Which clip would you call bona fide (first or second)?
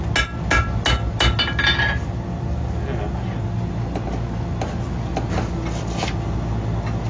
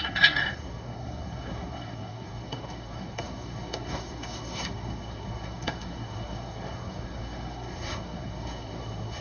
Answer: first